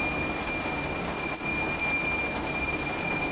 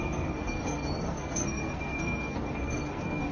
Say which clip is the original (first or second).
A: first